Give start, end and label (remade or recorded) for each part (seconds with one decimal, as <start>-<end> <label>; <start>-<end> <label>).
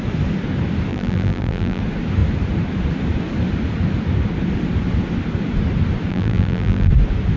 0.0-0.9 recorded; 0.9-1.8 remade; 1.8-6.1 recorded; 6.1-6.9 remade; 6.9-7.4 recorded